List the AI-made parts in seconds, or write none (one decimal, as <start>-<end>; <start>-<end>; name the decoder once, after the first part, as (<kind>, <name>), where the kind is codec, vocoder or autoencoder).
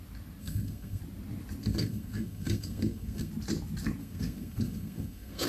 0.4-1.0 (codec, SNAC); 1.6-3.3; 4.0-5.5